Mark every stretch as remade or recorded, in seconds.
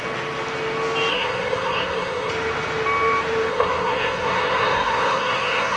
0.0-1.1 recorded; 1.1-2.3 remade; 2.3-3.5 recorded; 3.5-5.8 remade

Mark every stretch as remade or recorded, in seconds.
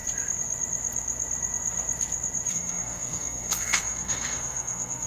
0.0-2.5 recorded; 2.5-5.1 remade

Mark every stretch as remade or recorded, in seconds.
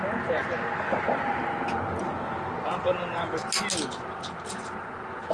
0.0-5.3 recorded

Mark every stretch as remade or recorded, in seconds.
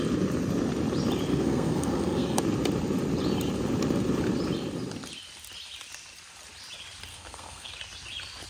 0.0-1.3 recorded; 1.3-2.4 remade; 2.4-7.1 recorded; 7.1-7.7 remade; 7.7-8.5 recorded